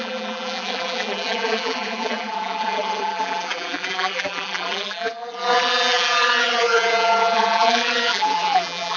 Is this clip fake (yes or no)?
yes